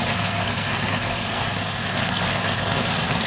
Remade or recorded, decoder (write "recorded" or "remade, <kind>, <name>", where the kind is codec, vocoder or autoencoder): remade, codec, SNAC